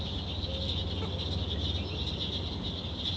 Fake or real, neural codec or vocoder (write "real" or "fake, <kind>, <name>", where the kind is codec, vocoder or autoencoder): real